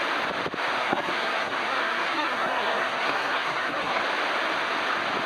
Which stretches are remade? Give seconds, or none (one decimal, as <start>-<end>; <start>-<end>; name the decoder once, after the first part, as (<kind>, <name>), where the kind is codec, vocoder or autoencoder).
0.8-4.0 (codec, SNAC)